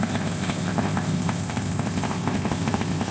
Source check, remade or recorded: remade